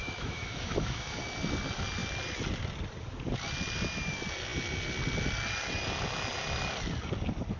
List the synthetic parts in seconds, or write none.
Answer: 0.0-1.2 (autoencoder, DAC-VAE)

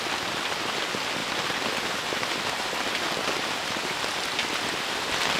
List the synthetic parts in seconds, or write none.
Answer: none